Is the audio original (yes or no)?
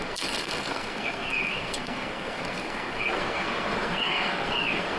no